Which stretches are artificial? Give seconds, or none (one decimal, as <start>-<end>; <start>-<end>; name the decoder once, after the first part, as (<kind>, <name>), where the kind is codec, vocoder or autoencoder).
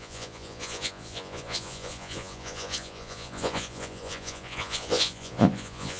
0.0-6.0 (vocoder, Vocos)